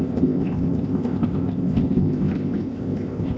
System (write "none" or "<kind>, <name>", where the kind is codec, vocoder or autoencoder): codec, ZipCodec